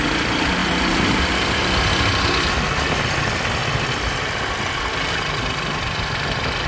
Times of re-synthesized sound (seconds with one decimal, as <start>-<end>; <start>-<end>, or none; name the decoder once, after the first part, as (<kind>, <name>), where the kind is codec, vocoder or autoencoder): none